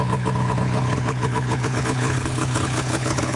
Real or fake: fake